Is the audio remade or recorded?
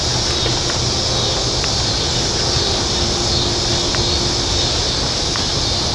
recorded